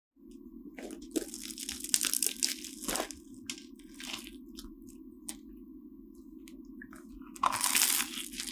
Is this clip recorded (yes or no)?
yes